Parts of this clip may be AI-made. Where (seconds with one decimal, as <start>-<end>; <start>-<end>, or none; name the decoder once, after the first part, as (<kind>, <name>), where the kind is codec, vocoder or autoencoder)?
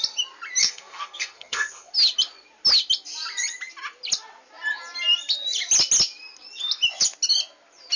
0.6-1.9 (codec, SNAC)